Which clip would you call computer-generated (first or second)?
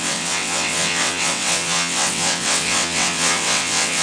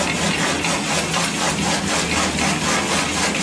first